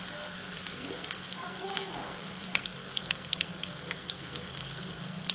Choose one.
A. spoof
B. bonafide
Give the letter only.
A